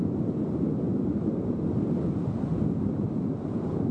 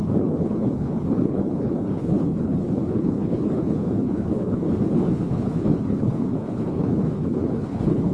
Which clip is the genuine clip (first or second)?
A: first